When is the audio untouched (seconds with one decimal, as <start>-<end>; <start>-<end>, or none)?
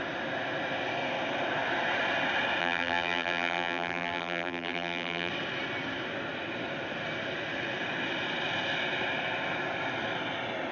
0.0-2.6; 5.3-10.7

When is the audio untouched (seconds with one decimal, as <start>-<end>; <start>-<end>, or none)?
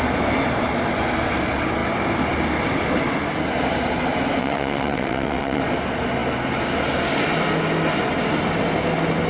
0.0-4.4; 5.6-9.3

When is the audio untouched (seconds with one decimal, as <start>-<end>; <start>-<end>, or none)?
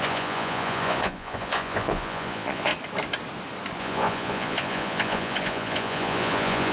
2.7-3.8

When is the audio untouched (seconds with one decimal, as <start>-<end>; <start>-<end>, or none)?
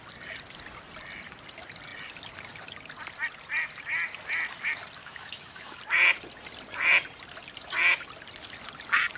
0.0-5.0; 5.8-9.2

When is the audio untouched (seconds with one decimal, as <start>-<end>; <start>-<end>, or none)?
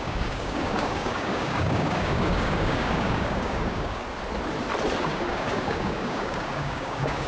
4.0-5.0